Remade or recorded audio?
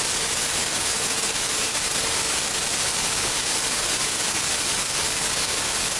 remade